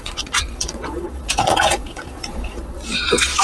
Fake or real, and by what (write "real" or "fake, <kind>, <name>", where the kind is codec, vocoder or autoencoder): fake, vocoder, Vocos